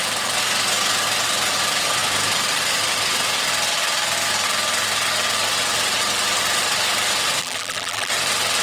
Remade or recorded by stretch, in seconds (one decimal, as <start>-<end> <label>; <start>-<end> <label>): 0.0-7.4 recorded; 7.4-8.1 remade; 8.1-8.6 recorded